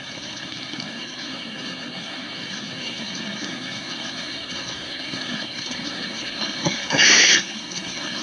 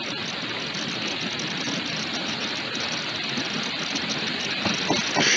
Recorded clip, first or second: second